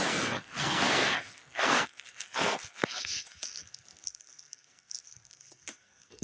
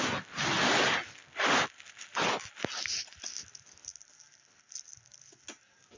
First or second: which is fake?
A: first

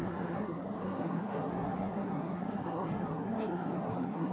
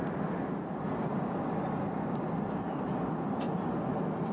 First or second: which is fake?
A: first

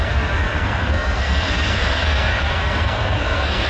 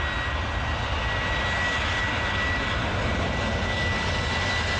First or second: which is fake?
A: first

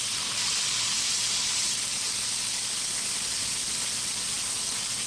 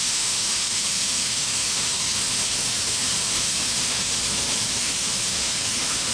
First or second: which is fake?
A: second